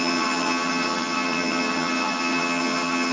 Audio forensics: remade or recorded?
remade